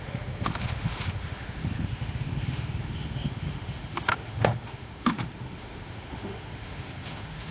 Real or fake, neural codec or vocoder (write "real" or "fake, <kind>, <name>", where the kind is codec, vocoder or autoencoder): fake, autoencoder, DAC-VAE